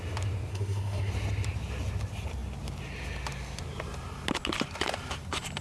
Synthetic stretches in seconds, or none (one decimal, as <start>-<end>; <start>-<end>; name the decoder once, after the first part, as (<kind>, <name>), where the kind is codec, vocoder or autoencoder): 0.5-1.1 (codec, SNAC)